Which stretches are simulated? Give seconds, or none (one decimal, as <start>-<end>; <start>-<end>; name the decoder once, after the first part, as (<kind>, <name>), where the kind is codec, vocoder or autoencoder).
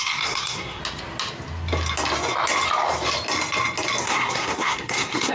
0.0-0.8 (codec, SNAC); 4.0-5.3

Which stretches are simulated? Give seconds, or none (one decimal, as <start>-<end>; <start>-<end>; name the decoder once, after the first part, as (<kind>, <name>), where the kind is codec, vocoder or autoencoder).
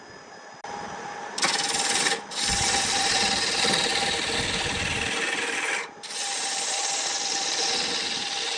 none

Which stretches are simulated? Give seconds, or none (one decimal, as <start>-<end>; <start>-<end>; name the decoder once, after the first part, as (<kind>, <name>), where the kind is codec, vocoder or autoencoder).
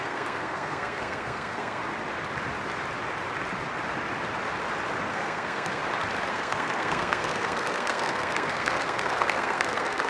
0.0-1.8 (codec, SNAC); 5.1-5.8; 6.3-10.1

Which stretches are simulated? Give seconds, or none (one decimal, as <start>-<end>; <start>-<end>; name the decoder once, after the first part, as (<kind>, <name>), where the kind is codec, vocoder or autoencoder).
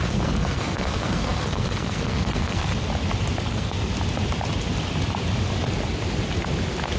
0.0-2.7 (codec, SNAC); 3.5-3.9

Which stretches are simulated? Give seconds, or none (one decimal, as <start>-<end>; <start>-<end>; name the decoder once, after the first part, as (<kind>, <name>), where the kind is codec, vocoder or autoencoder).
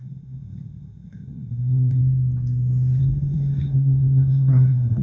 0.0-2.0 (codec, SNAC); 3.0-5.0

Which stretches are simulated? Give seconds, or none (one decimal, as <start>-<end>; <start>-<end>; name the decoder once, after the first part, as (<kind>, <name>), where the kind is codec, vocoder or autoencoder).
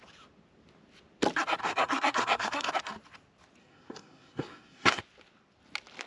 1.6-2.7 (codec, SNAC); 3.6-5.0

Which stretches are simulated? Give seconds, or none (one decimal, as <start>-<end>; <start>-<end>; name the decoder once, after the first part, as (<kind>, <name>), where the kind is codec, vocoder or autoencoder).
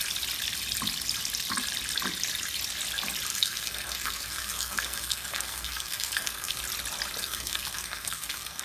3.3-6.6 (codec, SNAC); 7.2-8.6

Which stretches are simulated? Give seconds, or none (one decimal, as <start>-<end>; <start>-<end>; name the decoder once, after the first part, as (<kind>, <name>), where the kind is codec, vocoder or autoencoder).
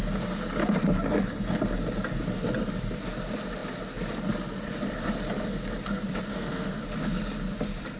6.3-6.8 (codec, SNAC)